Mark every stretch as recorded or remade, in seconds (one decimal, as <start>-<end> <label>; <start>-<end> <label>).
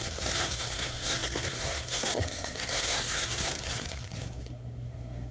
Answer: 0.0-5.3 remade